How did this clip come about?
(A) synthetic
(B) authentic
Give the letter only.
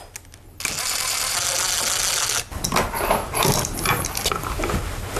B